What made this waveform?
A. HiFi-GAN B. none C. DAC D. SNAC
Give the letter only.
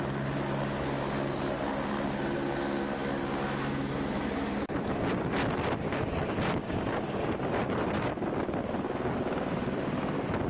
B